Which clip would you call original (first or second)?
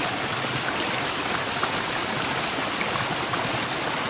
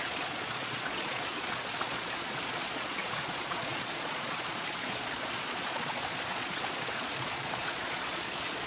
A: first